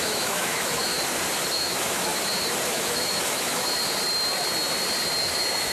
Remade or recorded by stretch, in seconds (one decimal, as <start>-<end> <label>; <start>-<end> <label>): 0.0-0.9 remade; 0.9-1.5 recorded; 1.5-2.1 remade; 2.1-2.7 recorded; 2.7-3.8 remade; 3.8-5.2 recorded; 5.2-5.7 remade